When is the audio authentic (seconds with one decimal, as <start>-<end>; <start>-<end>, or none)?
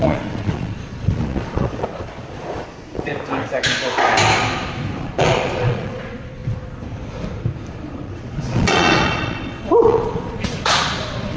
3.1-5.0; 6.4-7.7